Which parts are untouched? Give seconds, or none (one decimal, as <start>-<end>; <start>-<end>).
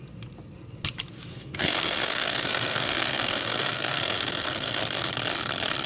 0.0-1.3; 4.8-5.9